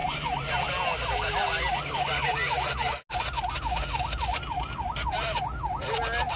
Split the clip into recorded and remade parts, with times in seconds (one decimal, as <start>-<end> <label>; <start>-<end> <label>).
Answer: 0.0-0.6 remade; 0.6-6.4 recorded